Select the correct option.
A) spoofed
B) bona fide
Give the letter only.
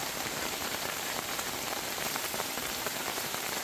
A